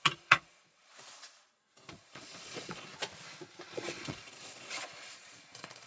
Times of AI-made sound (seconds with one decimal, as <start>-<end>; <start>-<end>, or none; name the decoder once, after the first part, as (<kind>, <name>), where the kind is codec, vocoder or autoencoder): 0.0-0.9 (vocoder, Vocos); 1.9-2.9; 3.7-5.9